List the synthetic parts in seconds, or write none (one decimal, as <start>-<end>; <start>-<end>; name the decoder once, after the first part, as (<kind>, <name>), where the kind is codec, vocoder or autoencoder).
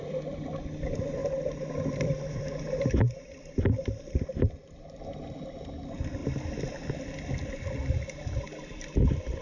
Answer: 1.2-2.8 (vocoder, BigVGAN v2)